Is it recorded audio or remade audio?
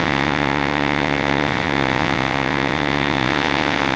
remade